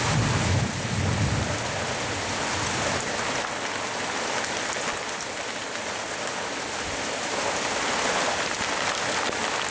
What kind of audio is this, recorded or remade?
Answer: recorded